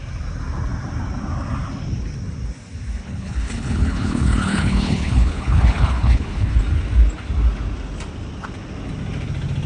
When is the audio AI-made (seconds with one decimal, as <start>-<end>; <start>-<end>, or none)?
3.0-6.6